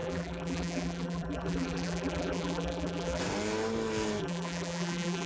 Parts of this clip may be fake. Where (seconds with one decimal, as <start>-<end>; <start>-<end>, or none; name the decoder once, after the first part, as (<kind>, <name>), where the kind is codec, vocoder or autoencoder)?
0.0-3.2 (vocoder, BigVGAN v2); 4.2-5.3